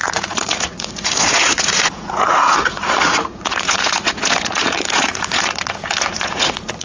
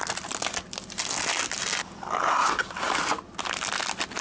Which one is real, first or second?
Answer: second